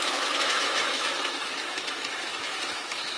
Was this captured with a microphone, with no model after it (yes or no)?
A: no